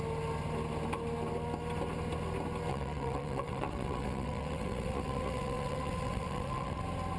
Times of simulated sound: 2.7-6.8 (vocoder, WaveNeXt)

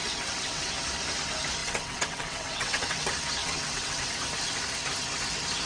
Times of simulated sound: 0.0-0.7 (vocoder, WaveNeXt); 1.6-3.0; 3.4-4.0

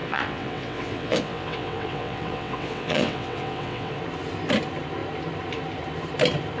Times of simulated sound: 0.0-4.0 (vocoder, WaveNeXt)

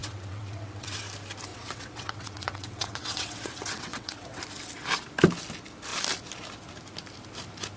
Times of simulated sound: 0.0-1.0 (vocoder, WaveNeXt); 1.5-4.4